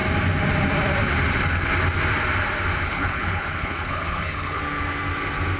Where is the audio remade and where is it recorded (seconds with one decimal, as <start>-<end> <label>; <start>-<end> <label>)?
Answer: 0.0-2.8 recorded; 2.8-4.6 remade; 4.6-5.6 recorded